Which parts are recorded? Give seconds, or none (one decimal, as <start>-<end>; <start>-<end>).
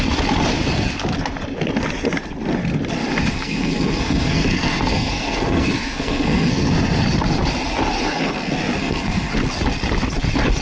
0.0-3.3; 6.7-8.8; 9.3-10.6